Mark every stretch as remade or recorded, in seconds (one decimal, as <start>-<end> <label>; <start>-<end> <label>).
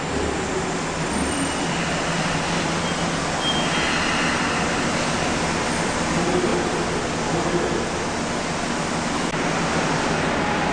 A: 0.0-6.5 remade; 6.5-7.2 recorded; 7.2-10.7 remade